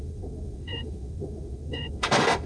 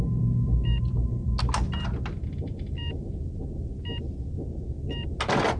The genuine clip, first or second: second